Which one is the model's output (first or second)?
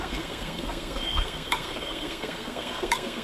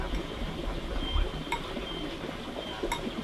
first